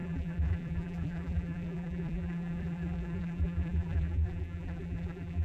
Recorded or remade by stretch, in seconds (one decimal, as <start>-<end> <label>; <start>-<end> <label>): 0.0-5.4 remade